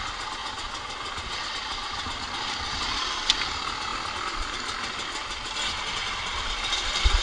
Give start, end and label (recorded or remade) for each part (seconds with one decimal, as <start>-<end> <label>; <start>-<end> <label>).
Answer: 0.0-7.2 recorded